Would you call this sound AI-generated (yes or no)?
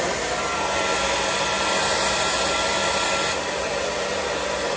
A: no